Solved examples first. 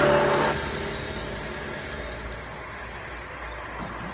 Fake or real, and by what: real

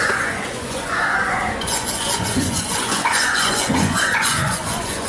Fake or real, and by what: fake, vocoder, Vocos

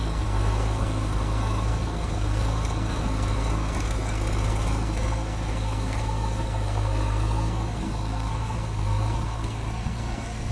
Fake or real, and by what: fake, codec, SNAC